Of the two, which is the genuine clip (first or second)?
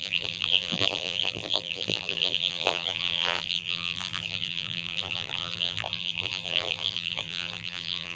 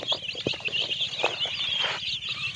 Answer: second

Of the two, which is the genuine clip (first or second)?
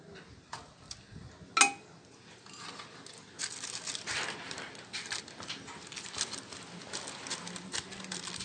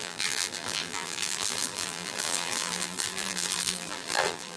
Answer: first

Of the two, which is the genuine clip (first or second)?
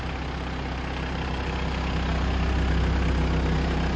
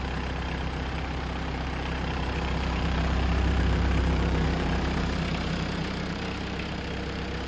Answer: first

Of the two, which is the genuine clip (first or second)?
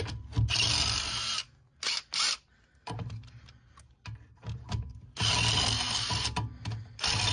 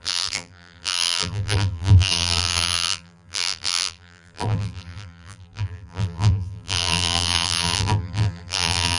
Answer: first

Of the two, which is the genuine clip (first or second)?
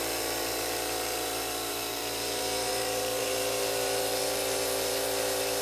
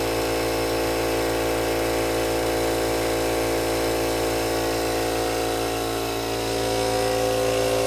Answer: second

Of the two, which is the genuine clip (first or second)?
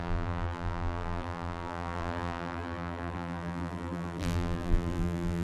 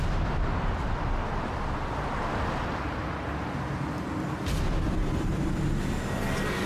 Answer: second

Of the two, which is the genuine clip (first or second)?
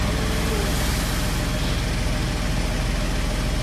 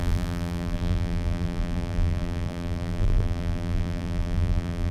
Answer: first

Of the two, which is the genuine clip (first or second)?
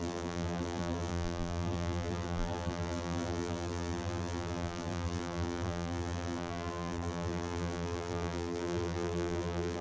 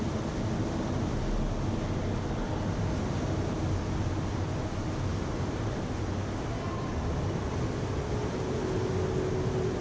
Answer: second